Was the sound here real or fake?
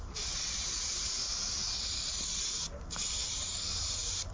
real